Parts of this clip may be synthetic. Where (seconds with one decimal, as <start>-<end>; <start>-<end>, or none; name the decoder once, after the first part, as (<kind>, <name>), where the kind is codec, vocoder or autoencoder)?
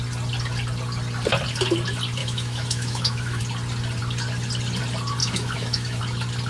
2.2-3.4 (autoencoder, DAC-VAE); 5.2-6.0